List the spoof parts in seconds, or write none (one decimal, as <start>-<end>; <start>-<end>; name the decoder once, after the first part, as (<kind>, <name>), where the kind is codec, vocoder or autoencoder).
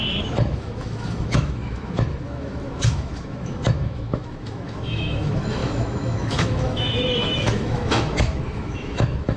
0.0-9.4 (autoencoder, DAC-VAE)